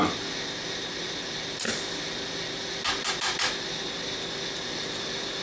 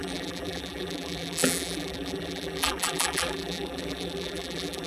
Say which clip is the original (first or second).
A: first